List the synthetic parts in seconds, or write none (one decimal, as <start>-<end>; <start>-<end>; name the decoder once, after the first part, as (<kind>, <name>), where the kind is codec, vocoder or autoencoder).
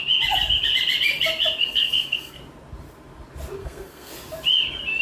1.6-2.4 (codec, SNAC); 3.6-4.1